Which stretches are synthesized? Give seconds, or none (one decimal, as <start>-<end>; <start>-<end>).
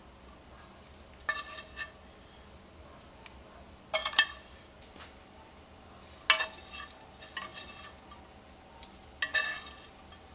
4.0-5.9; 7.5-8.5